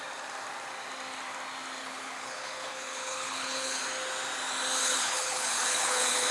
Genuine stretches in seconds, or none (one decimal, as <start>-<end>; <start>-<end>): 0.0-1.8; 3.8-4.8